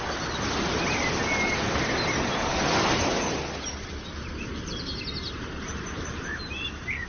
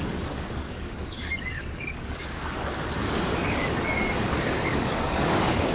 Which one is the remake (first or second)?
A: second